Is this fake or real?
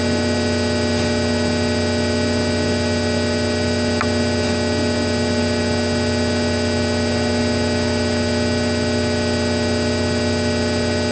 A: real